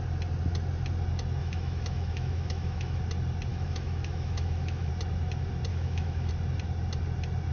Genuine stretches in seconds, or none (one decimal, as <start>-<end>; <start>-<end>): 0.0-1.4; 3.0-3.5; 4.9-5.7; 6.3-7.5